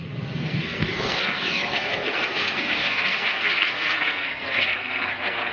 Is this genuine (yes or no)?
no